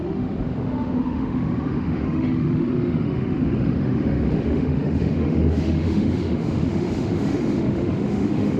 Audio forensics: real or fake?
fake